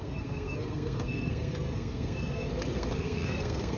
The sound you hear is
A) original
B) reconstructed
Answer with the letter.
B